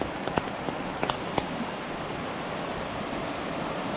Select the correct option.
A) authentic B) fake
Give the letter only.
A